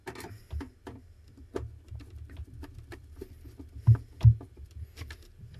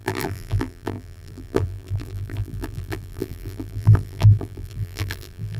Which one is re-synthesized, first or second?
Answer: second